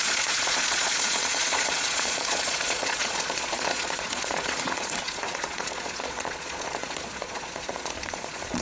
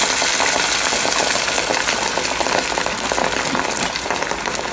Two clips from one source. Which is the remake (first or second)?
first